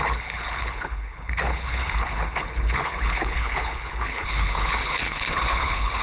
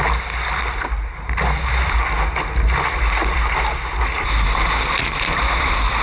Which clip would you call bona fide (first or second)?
second